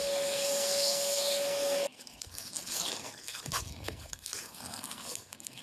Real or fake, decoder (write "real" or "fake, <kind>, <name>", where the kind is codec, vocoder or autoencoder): fake, codec, SNAC